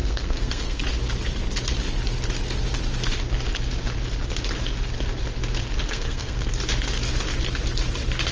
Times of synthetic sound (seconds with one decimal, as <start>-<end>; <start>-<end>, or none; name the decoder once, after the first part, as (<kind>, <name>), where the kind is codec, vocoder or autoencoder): 0.0-0.8 (codec, SNAC); 5.9-6.5